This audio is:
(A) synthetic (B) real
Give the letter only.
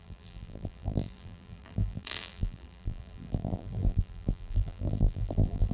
A